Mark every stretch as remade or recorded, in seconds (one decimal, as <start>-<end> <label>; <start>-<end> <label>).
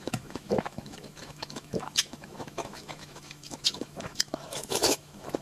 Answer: 0.0-5.4 remade